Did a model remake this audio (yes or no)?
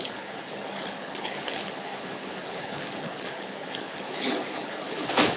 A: yes